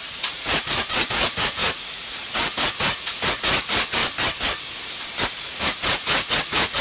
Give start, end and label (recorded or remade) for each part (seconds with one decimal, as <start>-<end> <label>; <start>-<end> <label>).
0.0-4.0 remade; 4.0-5.4 recorded; 5.4-6.8 remade